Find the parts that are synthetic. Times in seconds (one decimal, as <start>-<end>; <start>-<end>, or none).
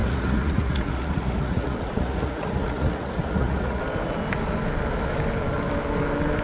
0.0-3.8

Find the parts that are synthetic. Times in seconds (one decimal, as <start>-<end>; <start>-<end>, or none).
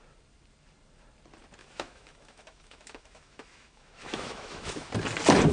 1.6-4.9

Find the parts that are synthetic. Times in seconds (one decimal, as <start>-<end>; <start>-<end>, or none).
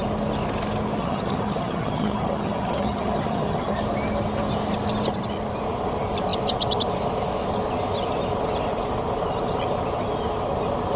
1.0-3.8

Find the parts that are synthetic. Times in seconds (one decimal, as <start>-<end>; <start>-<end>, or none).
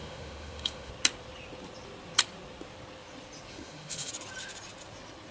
0.0-0.9; 3.5-4.1